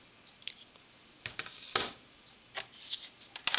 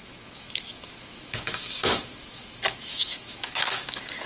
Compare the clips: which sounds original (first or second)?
first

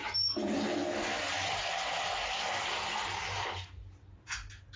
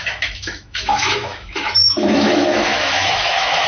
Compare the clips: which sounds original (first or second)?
first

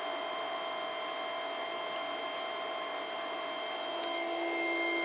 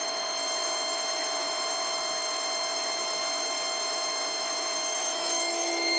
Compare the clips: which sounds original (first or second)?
first